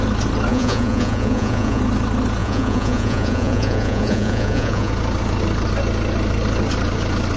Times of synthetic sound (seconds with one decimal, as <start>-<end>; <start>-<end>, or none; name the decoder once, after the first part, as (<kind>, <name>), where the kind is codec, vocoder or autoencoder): 0.5-1.8 (vocoder, Vocos); 2.4-4.9